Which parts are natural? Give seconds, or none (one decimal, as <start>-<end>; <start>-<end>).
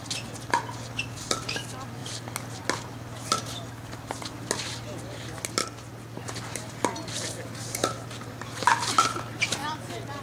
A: 0.0-5.6; 6.2-9.6